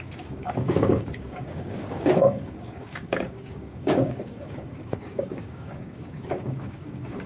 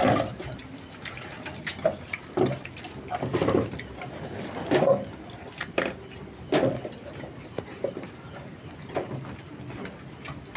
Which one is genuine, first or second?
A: second